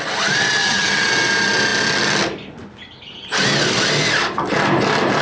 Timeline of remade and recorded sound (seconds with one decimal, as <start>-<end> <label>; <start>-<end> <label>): 0.0-0.6 recorded; 0.6-1.1 remade; 1.1-5.2 recorded